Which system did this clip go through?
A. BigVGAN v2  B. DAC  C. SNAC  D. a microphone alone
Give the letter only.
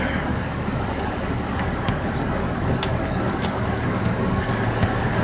B